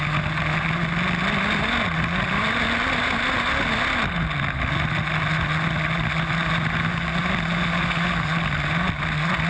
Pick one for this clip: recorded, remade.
recorded